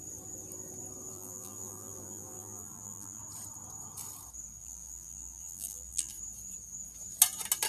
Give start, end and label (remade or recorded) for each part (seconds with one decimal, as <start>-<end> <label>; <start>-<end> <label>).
0.0-1.1 recorded; 1.1-3.2 remade; 3.2-4.6 recorded; 4.6-6.1 remade; 6.1-7.7 recorded